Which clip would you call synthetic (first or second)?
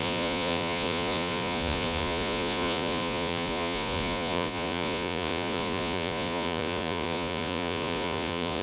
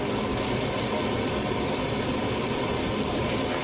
first